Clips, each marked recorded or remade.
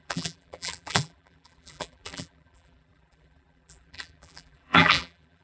remade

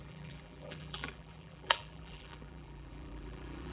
remade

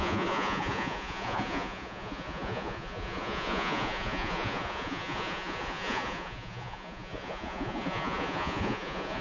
remade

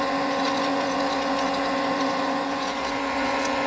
remade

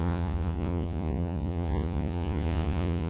remade